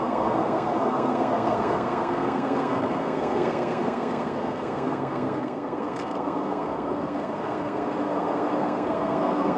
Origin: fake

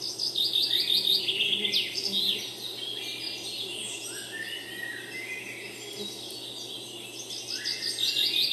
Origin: real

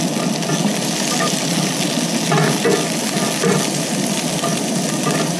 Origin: real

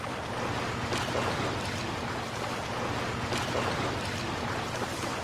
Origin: real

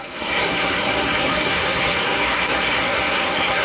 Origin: fake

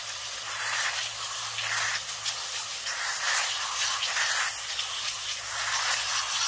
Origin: real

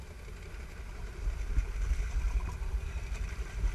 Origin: real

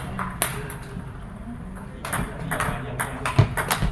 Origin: real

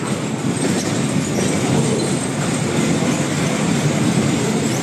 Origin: real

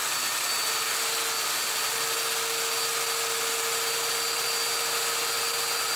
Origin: real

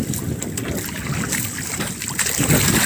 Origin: real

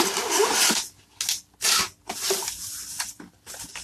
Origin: real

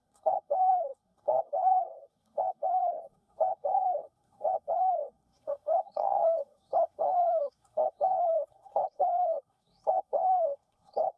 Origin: fake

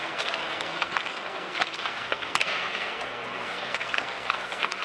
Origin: fake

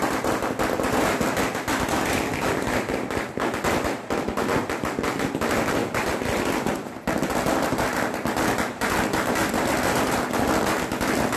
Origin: real